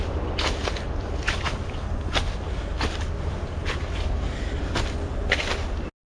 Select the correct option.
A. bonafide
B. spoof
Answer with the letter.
A